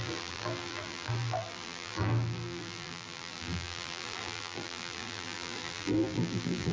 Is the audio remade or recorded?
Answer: remade